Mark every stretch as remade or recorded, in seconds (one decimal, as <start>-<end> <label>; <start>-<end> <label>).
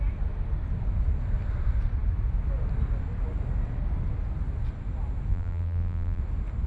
0.0-5.3 recorded; 5.3-6.2 remade; 6.2-6.7 recorded